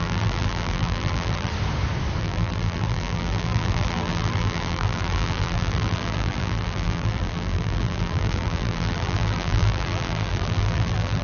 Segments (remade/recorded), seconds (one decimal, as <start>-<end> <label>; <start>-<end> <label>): 0.0-1.5 remade; 1.5-2.2 recorded; 2.2-11.2 remade